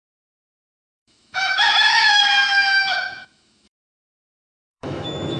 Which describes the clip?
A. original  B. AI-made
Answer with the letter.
B